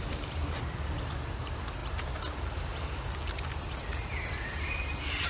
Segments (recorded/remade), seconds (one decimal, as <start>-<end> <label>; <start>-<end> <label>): 0.0-5.3 recorded